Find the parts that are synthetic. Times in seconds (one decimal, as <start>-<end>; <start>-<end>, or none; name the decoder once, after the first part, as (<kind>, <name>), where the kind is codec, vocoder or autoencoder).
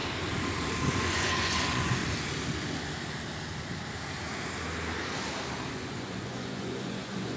0.9-2.0 (vocoder, Vocos); 5.7-7.4